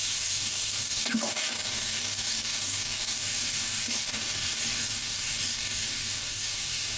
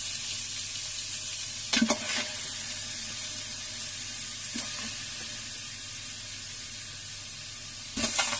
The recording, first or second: second